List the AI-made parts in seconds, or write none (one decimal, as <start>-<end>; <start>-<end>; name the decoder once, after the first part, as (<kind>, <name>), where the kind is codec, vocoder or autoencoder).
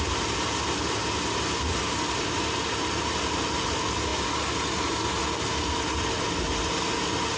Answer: none